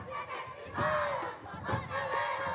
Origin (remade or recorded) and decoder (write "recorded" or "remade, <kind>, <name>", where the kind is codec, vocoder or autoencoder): recorded